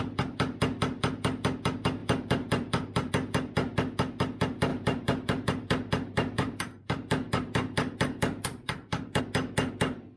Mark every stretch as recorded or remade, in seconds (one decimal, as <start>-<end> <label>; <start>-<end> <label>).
0.0-2.0 recorded; 2.0-3.1 remade; 3.1-4.7 recorded; 4.7-9.2 remade; 9.2-10.2 recorded

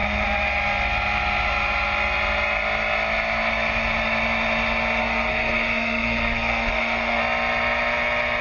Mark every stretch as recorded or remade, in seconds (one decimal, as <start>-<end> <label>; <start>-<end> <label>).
0.0-5.0 recorded; 5.0-7.2 remade; 7.2-8.4 recorded

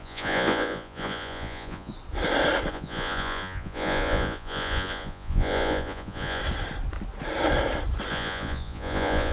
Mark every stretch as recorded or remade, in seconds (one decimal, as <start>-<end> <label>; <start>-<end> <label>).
0.0-1.9 remade; 1.9-2.7 recorded; 2.7-6.4 remade; 6.4-8.1 recorded; 8.1-9.3 remade

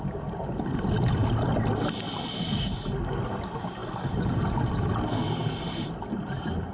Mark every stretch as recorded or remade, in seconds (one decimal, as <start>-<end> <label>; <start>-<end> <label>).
0.0-6.7 recorded

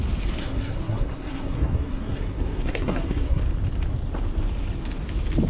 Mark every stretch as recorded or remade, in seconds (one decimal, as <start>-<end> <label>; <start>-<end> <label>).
0.0-0.4 recorded; 0.4-3.4 remade; 3.4-5.5 recorded

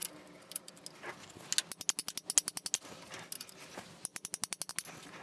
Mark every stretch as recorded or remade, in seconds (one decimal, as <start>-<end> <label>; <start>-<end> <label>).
0.0-0.7 remade; 0.7-5.2 recorded

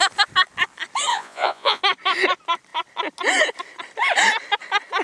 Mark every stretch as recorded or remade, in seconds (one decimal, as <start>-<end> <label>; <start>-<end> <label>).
0.0-1.1 recorded; 1.1-1.8 remade; 1.8-5.0 recorded

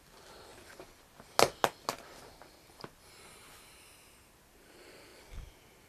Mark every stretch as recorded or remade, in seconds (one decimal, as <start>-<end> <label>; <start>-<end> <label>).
0.0-5.9 recorded